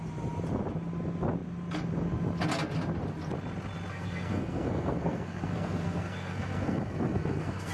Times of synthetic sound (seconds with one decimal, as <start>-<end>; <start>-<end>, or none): 3.9-7.7